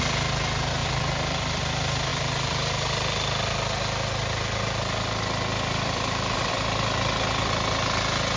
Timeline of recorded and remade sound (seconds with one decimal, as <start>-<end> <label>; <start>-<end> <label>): 0.0-0.8 recorded; 0.8-1.6 remade; 1.6-2.1 recorded; 2.1-6.5 remade; 6.5-8.4 recorded